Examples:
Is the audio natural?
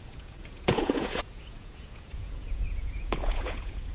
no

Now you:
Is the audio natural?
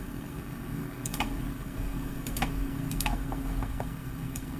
no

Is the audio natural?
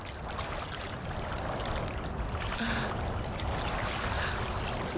yes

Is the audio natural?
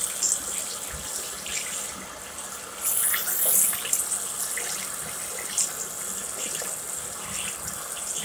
yes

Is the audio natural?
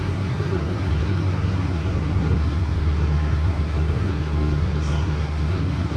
no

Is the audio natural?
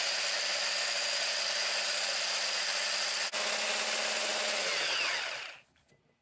yes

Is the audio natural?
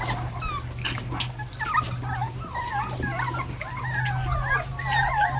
yes